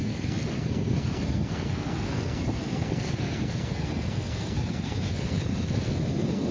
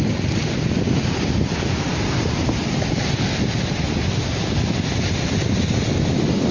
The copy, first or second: first